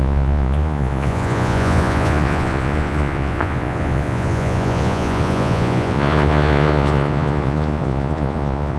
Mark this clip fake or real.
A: fake